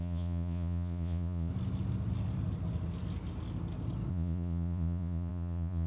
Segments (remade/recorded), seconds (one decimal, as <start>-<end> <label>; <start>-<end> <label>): 0.0-1.5 remade; 1.5-4.1 recorded; 4.1-5.9 remade